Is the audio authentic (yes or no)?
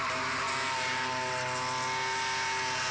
yes